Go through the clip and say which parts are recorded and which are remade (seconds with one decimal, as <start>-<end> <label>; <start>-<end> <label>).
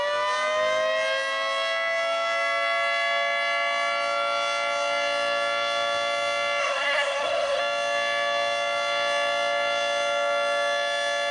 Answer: 0.0-6.6 recorded; 6.6-7.6 remade; 7.6-11.3 recorded